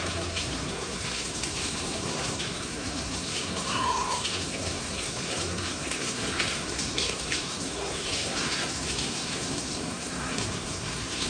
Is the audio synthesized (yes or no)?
yes